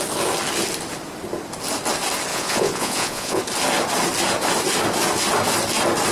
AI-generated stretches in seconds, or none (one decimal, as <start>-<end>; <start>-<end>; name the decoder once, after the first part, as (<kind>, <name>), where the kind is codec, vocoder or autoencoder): 2.3-3.4 (vocoder, Vocos)

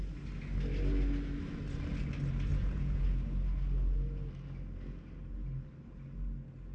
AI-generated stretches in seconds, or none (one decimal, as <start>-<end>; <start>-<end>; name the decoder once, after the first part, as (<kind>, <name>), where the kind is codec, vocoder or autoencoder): 2.5-3.0 (vocoder, Vocos)

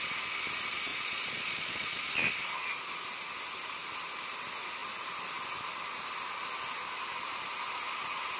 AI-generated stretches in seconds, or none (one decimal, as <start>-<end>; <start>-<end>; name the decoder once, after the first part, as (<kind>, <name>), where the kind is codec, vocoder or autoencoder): 0.9-2.0 (vocoder, Vocos)

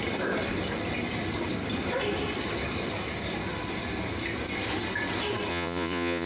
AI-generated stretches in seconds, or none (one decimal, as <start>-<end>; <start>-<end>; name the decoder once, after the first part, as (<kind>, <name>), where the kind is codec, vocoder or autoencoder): 5.5-6.3 (vocoder, Vocos)